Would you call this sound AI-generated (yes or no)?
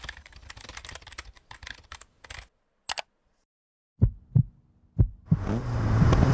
no